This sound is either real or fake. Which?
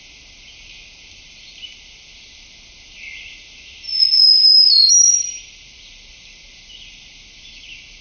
real